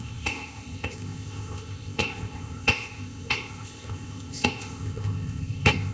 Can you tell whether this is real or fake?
fake